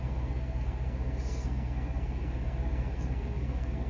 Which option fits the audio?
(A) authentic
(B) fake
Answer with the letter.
B